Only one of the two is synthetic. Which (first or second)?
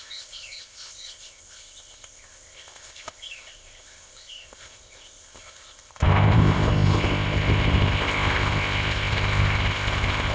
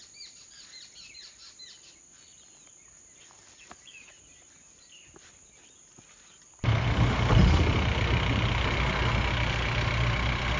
first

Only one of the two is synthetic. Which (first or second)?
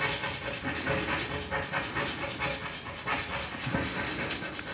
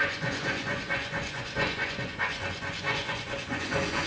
second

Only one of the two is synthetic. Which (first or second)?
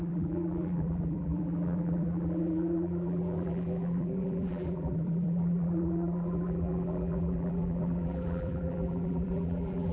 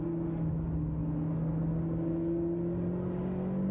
first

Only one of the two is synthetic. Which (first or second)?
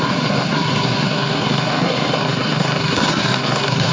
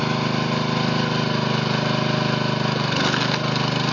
first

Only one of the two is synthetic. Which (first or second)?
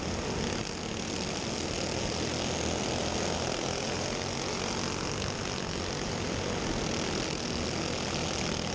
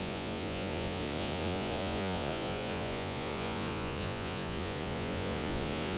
second